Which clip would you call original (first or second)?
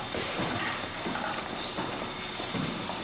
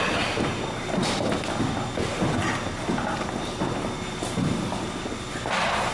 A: second